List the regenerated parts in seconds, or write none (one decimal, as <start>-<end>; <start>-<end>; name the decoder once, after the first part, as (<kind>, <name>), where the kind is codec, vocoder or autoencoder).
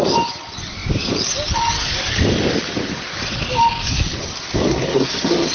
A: 4.7-5.5 (codec, SNAC)